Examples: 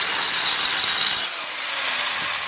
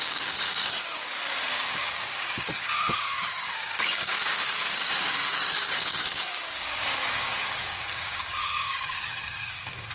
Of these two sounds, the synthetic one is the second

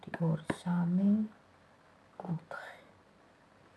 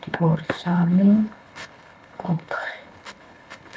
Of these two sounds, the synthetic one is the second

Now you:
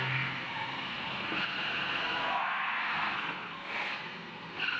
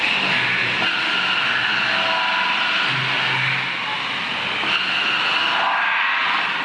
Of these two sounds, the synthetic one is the first